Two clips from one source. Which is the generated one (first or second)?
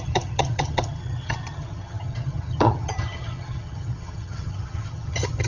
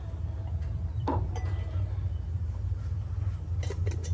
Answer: first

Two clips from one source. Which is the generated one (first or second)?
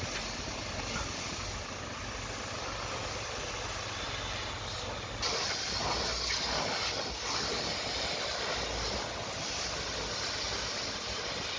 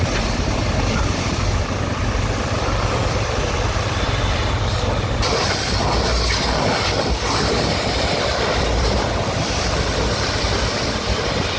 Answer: second